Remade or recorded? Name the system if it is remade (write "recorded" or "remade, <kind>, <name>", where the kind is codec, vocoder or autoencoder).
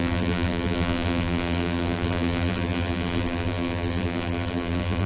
remade, vocoder, BigVGAN v2